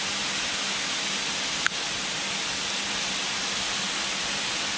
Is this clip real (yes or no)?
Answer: yes